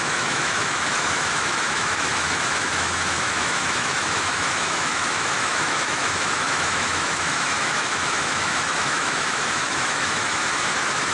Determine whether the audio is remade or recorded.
remade